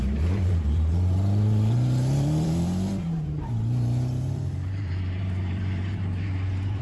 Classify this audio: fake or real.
fake